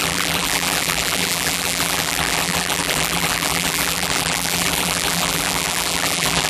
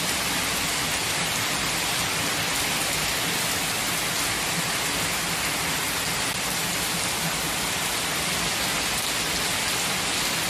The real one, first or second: second